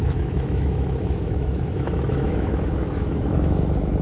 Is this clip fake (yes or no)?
yes